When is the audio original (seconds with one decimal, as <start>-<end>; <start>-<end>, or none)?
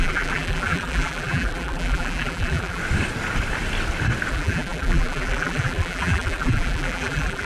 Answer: 2.8-4.3